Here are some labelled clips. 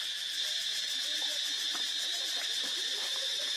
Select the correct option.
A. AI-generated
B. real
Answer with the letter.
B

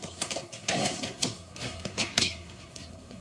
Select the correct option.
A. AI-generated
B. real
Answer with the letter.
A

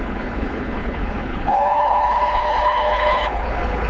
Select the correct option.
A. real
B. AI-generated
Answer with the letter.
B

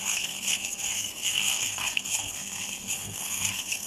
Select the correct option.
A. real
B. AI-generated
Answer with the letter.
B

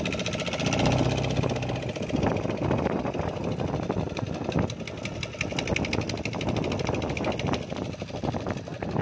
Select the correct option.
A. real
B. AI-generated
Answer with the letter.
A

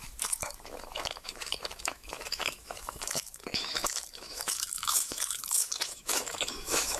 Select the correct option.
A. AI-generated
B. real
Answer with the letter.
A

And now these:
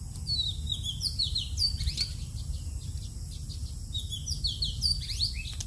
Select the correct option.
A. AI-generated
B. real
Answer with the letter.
B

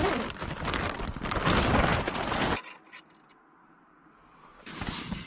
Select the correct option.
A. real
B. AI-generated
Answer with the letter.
A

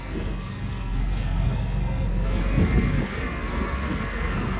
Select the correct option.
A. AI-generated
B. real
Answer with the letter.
A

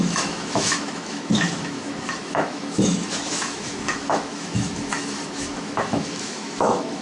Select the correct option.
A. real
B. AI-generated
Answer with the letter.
B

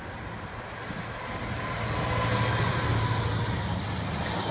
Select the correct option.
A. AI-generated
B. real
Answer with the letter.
B